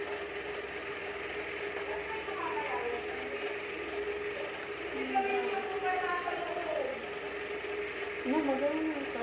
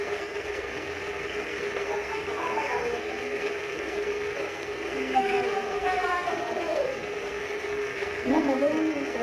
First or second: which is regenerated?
second